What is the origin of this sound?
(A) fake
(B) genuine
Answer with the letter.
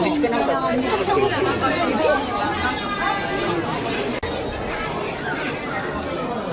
B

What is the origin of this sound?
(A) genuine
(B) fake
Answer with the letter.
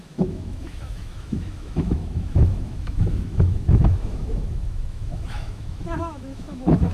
B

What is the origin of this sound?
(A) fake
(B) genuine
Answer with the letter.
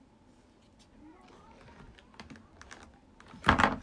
B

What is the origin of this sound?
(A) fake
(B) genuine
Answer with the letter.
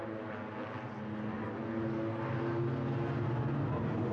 B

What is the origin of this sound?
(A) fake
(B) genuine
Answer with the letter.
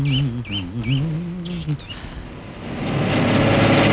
B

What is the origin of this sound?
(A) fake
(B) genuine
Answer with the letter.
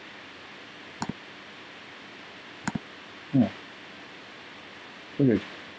B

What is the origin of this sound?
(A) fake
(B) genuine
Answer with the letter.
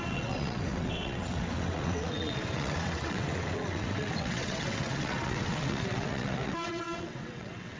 A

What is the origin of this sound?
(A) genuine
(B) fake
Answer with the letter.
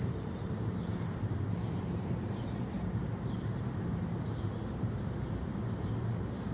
B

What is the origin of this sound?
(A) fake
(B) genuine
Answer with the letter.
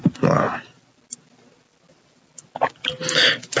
B